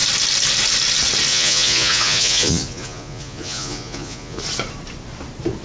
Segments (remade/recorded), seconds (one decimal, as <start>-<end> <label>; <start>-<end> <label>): 0.0-1.3 recorded; 1.3-4.4 remade; 4.4-5.6 recorded